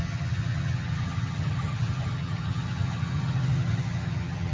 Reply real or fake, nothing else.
fake